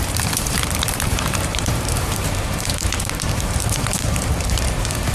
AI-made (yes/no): yes